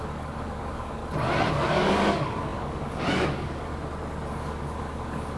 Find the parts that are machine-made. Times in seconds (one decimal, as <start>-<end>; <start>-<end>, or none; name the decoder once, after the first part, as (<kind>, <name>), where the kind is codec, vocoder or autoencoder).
0.0-1.0 (codec, DAC); 1.5-3.7; 4.3-5.4